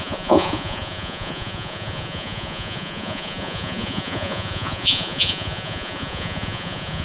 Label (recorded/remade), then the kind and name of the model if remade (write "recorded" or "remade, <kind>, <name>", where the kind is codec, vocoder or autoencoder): remade, vocoder, Vocos